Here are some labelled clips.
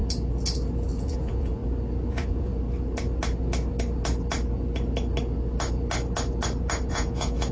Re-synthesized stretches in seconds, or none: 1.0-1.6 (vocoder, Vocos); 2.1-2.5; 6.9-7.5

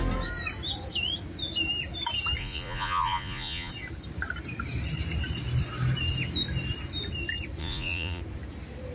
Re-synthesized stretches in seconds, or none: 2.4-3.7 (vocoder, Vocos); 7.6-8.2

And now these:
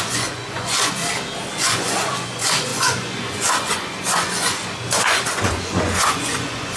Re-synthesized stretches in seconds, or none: 0.0-1.0 (vocoder, Vocos); 1.6-6.8

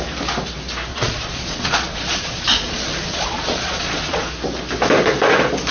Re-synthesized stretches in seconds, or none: 0.9-4.3 (vocoder, Vocos)

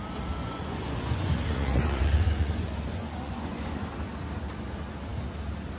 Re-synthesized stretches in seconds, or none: 0.4-3.9 (vocoder, Vocos)

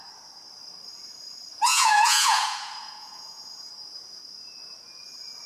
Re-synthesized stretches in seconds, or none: 1.5-4.2 (vocoder, Vocos)

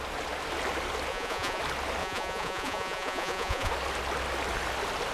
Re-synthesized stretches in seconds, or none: 1.1-1.6 (vocoder, Vocos); 2.0-3.7